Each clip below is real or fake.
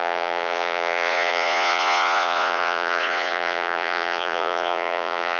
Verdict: fake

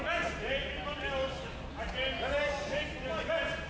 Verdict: real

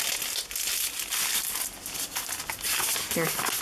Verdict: real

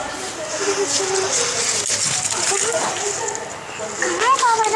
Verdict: real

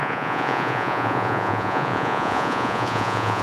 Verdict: fake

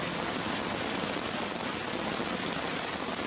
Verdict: real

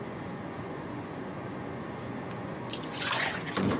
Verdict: fake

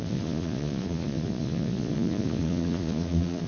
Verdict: fake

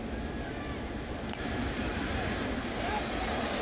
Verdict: real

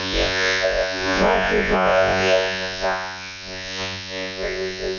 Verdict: fake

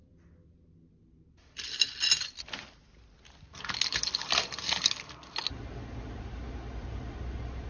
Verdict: real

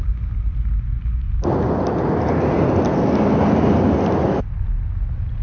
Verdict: real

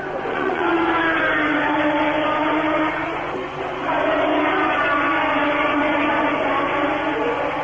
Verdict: fake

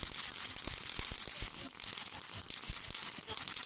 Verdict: real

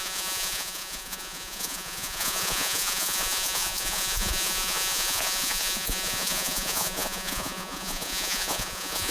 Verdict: fake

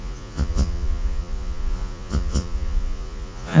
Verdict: fake